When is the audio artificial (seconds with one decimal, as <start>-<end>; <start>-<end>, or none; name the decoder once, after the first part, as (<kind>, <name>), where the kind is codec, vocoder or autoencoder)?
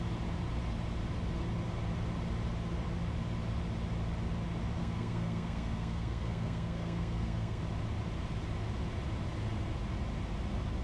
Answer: 4.8-7.6 (codec, SNAC)